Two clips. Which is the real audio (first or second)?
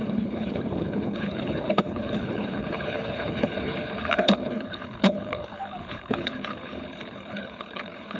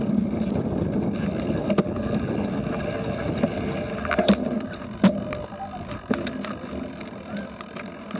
second